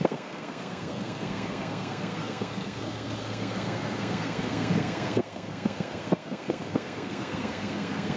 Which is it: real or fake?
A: fake